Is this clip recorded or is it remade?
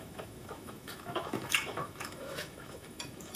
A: remade